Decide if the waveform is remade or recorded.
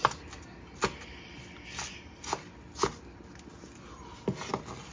recorded